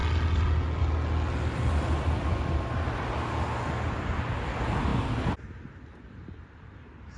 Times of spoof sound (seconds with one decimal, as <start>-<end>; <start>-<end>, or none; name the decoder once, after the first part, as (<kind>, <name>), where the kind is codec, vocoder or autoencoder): none